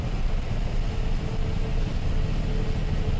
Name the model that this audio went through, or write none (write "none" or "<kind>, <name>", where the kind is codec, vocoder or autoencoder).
none